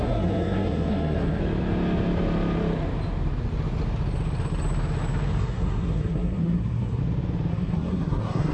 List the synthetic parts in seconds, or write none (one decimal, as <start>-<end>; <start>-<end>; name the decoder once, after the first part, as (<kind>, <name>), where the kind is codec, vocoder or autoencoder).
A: 0.0-1.4 (codec, SNAC); 5.4-7.0; 7.5-8.5